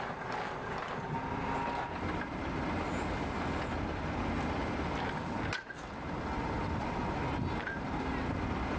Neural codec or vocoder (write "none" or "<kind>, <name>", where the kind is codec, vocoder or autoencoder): none